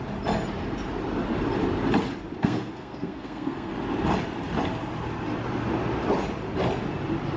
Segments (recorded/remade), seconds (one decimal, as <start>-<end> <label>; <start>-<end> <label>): 0.0-2.4 recorded; 2.4-3.7 remade; 3.7-7.4 recorded